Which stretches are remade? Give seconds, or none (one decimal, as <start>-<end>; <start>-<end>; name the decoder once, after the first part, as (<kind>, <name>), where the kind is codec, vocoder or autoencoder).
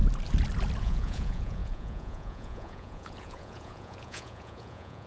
0.8-5.1 (vocoder, Vocos)